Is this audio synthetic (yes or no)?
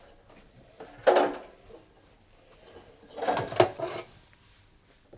no